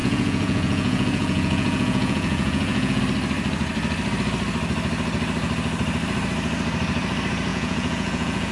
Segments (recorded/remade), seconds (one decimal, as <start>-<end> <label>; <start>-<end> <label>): 0.0-3.0 remade; 3.0-7.5 recorded; 7.5-8.5 remade